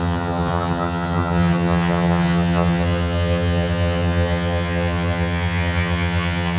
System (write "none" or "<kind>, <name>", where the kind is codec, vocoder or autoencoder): vocoder, HiFi-GAN